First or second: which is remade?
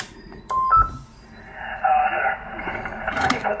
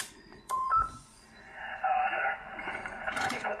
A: second